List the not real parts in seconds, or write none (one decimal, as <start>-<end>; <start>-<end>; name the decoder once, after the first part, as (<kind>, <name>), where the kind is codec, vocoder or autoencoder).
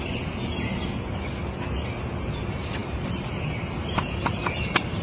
2.8-3.3 (vocoder, BigVGAN v2)